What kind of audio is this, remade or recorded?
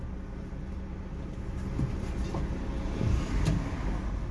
recorded